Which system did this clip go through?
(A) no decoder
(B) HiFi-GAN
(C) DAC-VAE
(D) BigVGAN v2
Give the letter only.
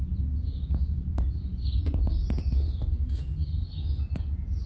A